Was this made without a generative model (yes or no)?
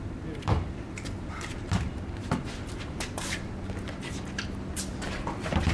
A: no